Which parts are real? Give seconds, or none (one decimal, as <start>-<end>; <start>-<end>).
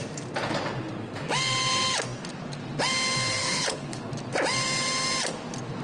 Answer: 0.0-3.4; 4.1-5.8